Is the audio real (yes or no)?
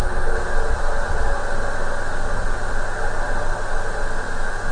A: yes